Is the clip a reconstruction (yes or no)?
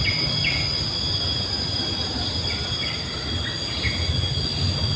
no